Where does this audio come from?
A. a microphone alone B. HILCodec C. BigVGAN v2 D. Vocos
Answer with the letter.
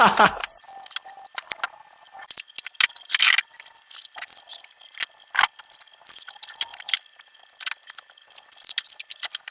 A